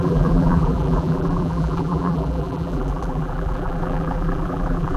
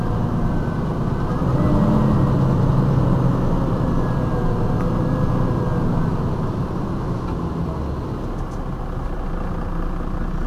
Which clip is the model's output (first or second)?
first